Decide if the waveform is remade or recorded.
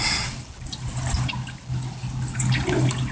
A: remade